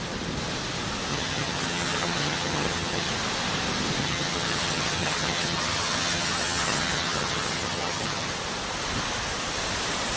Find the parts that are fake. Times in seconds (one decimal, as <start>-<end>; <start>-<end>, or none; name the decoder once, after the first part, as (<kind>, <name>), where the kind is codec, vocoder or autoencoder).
1.1-3.1 (vocoder, HiFi-GAN); 4.0-8.3